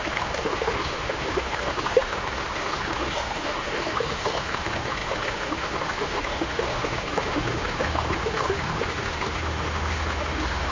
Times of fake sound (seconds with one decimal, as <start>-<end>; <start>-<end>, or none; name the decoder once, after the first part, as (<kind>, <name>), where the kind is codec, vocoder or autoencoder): 0.0-10.7 (autoencoder, DAC-VAE)